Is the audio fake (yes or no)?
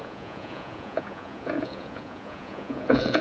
yes